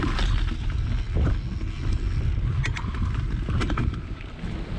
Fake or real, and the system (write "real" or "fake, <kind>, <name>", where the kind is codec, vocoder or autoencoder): real